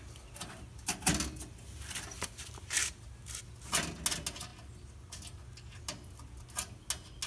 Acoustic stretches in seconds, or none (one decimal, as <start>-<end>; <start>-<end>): 0.0-7.3